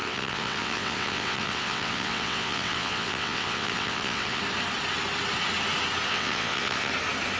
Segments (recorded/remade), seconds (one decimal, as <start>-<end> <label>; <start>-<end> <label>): 0.0-4.4 remade; 4.4-6.1 recorded; 6.1-6.9 remade; 6.9-7.4 recorded